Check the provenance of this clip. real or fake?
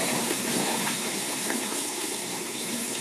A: fake